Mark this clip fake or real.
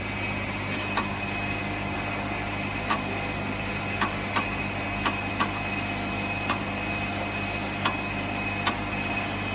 real